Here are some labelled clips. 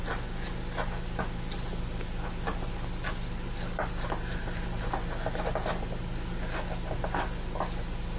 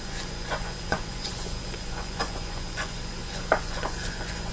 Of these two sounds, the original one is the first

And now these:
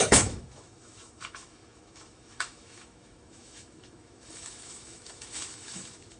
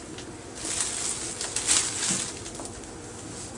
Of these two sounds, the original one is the second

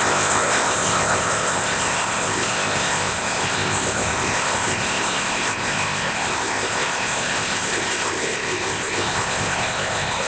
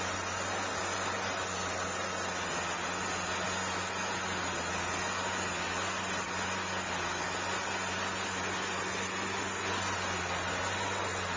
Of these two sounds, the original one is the second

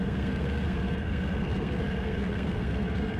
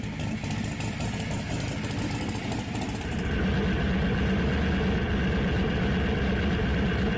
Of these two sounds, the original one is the second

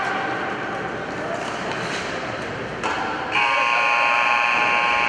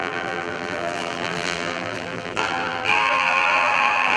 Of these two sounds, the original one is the first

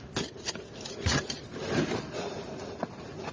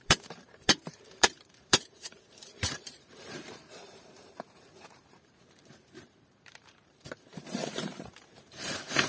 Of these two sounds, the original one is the first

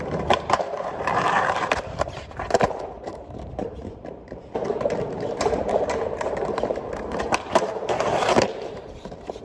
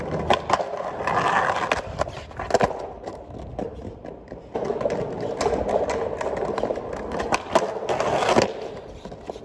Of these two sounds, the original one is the second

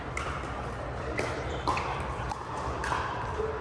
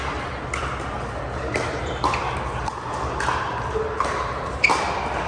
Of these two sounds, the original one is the second